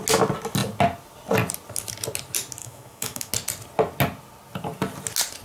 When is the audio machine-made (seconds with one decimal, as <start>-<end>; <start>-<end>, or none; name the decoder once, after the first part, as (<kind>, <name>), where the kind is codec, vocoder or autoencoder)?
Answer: 2.6-3.3 (autoencoder, DAC-VAE)

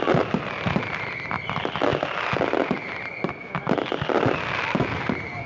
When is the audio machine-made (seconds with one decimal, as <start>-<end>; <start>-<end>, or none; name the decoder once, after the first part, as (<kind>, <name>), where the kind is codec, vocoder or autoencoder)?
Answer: none

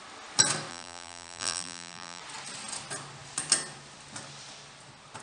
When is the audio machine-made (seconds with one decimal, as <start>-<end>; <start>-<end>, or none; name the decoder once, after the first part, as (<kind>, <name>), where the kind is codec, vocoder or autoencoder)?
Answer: 0.7-2.2 (vocoder, BigVGAN v2)